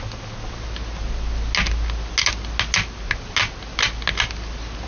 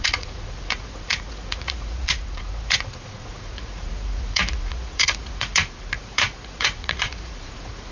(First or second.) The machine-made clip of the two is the second